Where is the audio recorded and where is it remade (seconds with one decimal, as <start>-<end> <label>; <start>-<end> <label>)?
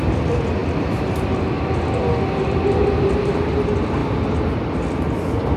0.0-5.6 recorded